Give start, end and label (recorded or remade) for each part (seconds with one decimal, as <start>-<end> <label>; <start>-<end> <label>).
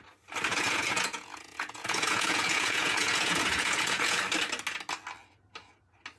0.0-0.5 recorded; 0.5-4.2 remade; 4.2-6.2 recorded